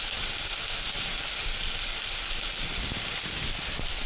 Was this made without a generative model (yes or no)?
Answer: yes